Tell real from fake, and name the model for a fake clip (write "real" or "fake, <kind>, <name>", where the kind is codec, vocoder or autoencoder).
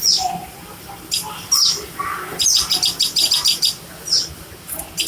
real